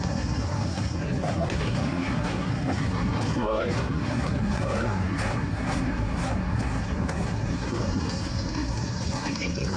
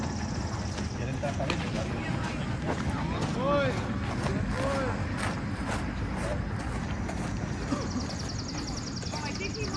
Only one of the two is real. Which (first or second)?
second